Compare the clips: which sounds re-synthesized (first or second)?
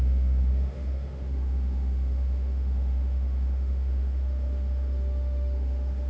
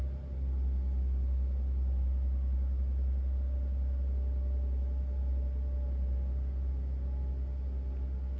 first